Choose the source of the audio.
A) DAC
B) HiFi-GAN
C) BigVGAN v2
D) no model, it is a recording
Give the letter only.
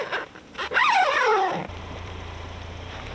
C